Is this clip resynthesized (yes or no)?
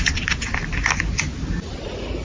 no